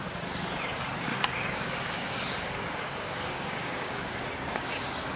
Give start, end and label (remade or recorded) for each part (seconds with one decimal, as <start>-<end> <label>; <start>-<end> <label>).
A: 0.0-1.1 recorded; 1.1-4.2 remade; 4.2-5.2 recorded